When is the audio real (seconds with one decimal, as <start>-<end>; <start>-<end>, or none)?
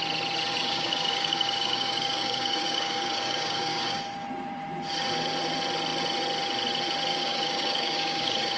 0.0-0.5; 4.0-7.1